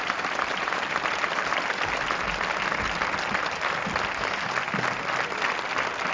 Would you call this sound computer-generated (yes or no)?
no